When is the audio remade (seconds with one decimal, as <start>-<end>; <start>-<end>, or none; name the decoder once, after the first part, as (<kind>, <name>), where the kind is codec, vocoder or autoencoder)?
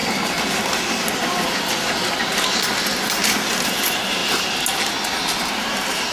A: 3.7-4.2 (vocoder, BigVGAN v2); 5.4-6.1